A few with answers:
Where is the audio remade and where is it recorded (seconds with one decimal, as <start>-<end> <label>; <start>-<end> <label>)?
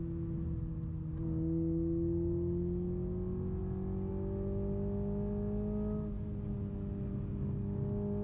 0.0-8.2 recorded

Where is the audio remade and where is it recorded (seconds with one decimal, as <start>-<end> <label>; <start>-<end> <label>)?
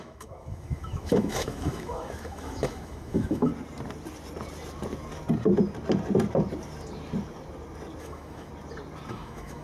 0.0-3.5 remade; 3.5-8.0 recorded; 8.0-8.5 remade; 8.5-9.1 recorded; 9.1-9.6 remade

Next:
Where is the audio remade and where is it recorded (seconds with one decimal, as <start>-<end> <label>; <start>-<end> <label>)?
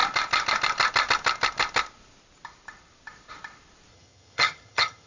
0.0-3.9 recorded; 3.9-5.1 remade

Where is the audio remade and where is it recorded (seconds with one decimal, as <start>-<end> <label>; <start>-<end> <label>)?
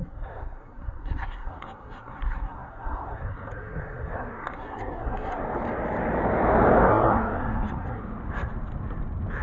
0.0-5.4 remade; 5.4-6.9 recorded; 6.9-8.0 remade; 8.0-9.4 recorded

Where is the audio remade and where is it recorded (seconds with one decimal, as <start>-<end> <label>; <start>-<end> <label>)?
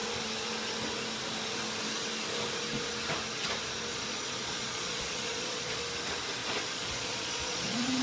0.0-3.9 recorded; 3.9-5.8 remade; 5.8-6.4 recorded; 6.4-8.0 remade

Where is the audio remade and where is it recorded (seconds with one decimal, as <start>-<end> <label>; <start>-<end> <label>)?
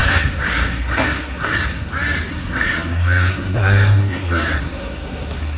0.0-1.9 remade; 1.9-2.3 recorded; 2.3-5.6 remade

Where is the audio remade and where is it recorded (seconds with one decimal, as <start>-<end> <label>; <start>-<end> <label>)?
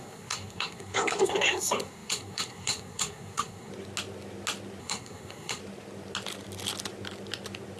0.0-3.7 remade; 3.7-4.8 recorded; 4.8-5.6 remade; 5.6-7.8 recorded